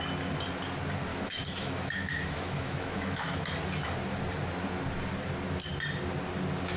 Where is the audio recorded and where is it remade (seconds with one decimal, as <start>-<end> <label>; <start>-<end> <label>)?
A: 0.0-1.1 recorded; 1.1-3.4 remade; 3.4-6.8 recorded